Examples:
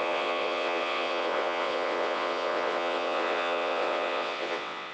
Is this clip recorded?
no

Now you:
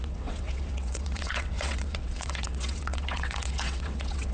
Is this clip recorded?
no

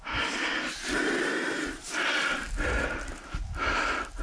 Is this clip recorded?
yes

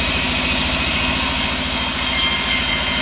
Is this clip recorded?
yes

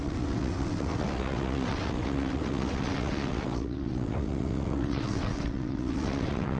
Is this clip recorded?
no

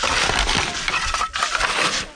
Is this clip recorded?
yes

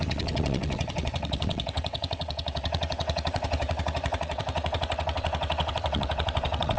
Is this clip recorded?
no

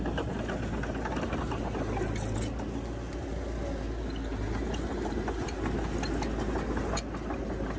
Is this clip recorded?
yes